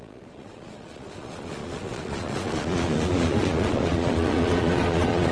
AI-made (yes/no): yes